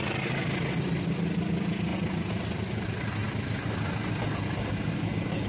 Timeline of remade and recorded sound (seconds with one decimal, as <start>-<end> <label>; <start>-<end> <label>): 0.0-5.5 recorded